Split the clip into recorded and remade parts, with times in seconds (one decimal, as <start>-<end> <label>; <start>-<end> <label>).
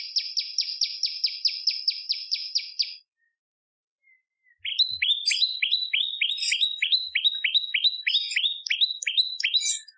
0.0-10.0 recorded